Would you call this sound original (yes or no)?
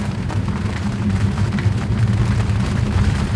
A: no